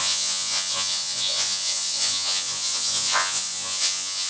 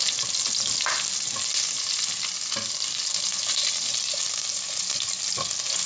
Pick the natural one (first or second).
second